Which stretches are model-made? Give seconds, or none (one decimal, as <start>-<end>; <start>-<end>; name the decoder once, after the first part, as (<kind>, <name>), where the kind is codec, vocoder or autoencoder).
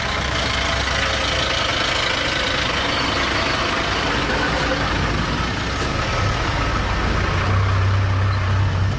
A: none